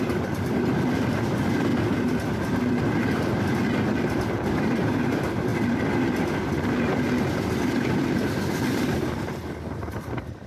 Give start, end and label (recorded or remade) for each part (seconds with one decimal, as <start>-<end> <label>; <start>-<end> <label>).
0.0-1.7 remade; 1.7-3.5 recorded; 3.5-5.5 remade; 5.5-7.3 recorded; 7.3-10.5 remade